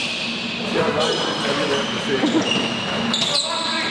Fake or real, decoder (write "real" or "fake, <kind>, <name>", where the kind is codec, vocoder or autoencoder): real